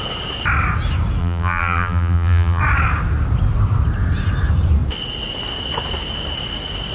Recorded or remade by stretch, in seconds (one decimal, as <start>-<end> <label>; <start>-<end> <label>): 0.0-1.2 recorded; 1.2-2.6 remade; 2.6-6.9 recorded